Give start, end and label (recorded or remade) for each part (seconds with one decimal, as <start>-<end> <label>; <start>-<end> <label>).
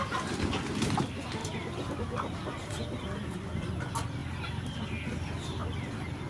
0.0-1.4 recorded; 1.4-3.3 remade; 3.3-4.2 recorded; 4.2-4.9 remade; 4.9-5.6 recorded; 5.6-6.3 remade